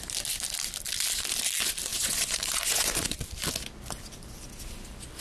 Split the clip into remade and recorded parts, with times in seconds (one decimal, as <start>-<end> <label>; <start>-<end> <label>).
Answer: 0.0-1.9 recorded; 1.9-3.2 remade; 3.2-5.2 recorded